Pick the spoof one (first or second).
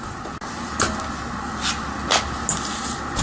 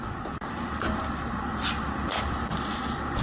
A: second